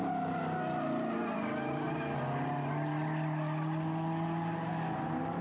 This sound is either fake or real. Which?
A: real